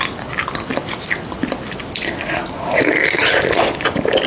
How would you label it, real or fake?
real